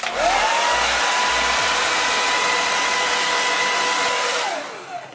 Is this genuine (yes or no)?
yes